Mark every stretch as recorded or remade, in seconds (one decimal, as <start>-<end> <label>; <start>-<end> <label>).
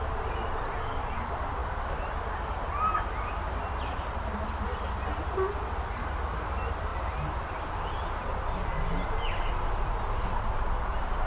0.0-11.3 recorded